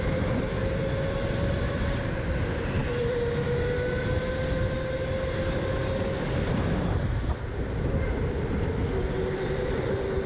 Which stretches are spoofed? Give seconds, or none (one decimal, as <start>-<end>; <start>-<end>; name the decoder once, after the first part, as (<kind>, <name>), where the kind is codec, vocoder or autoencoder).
none